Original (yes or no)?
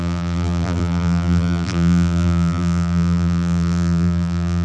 no